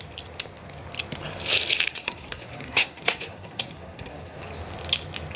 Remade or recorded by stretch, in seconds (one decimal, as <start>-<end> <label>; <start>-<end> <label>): 0.0-1.9 recorded; 1.9-4.4 remade; 4.4-5.4 recorded